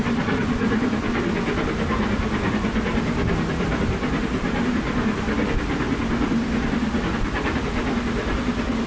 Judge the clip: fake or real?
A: real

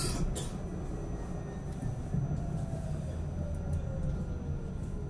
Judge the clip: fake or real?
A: real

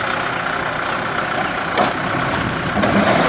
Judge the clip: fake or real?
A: real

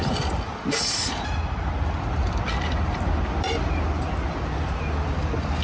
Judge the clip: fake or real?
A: real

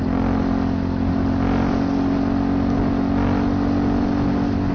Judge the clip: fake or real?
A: real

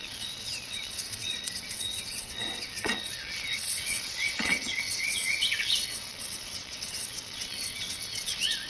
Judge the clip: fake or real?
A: fake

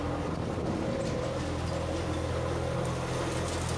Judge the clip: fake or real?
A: real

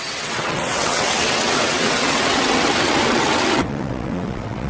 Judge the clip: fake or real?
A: fake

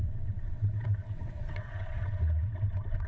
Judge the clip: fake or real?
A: fake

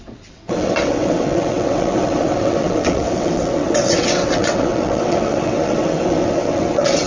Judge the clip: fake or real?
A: fake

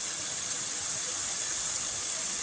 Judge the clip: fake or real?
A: fake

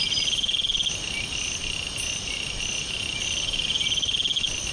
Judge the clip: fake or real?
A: real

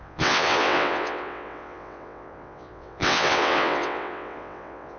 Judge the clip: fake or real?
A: fake